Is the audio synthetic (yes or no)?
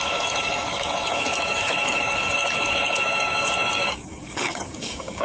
yes